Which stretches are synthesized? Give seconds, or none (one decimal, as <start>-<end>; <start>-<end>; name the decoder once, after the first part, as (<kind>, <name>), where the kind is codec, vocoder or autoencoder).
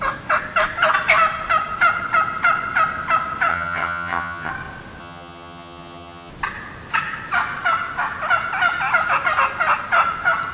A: 3.5-4.5 (vocoder, HiFi-GAN); 5.0-6.3